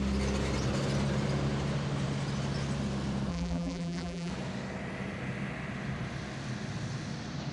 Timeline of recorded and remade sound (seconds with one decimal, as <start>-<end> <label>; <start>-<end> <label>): 0.0-3.3 recorded; 3.3-4.3 remade; 4.3-7.5 recorded